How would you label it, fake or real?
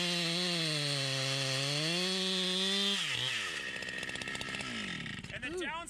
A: real